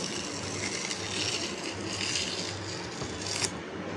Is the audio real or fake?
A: real